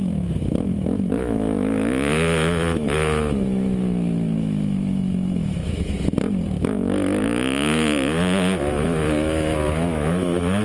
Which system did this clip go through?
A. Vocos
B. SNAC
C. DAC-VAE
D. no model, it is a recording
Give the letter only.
C